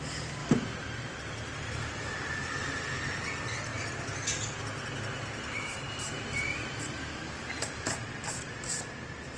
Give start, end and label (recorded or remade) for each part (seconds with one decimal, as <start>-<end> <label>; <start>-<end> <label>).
0.0-0.4 remade; 0.4-1.0 recorded; 1.0-3.7 remade; 3.7-8.3 recorded; 8.3-9.4 remade